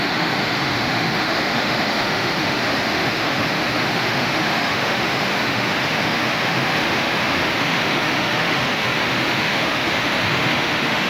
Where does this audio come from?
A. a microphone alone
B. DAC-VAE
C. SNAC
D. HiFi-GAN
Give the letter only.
B